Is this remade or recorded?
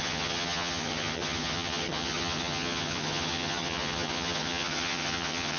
remade